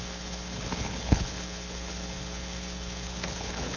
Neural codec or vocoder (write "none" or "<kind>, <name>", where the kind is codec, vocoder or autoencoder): codec, HILCodec